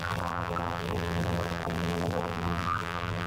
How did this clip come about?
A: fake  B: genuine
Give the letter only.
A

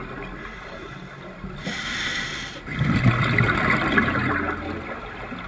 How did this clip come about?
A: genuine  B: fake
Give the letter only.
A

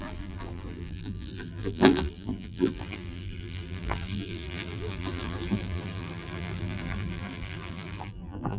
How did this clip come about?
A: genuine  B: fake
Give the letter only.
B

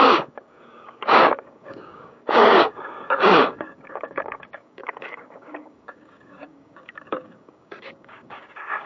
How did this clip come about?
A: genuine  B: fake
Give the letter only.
B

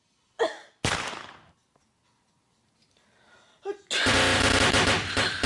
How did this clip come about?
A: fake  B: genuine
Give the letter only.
B